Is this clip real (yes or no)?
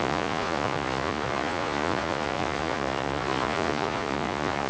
no